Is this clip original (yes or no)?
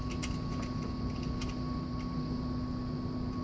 yes